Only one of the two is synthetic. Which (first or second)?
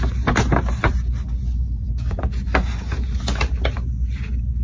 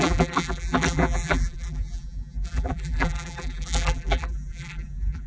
second